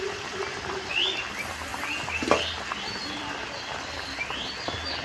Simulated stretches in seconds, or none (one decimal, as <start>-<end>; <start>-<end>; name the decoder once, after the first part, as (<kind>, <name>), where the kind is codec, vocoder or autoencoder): none